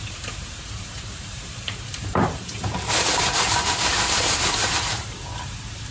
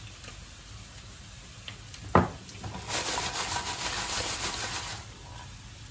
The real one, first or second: second